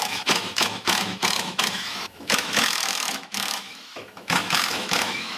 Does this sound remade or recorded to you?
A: remade